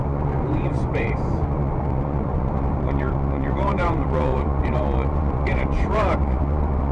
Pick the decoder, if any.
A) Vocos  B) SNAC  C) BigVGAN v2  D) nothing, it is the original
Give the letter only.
A